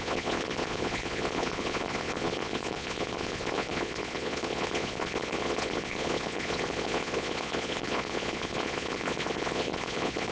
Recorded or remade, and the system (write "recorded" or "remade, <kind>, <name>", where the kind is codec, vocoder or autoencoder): remade, vocoder, Vocos